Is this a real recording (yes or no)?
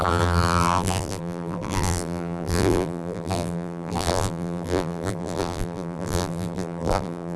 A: no